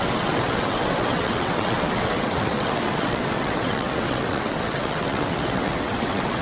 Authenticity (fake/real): fake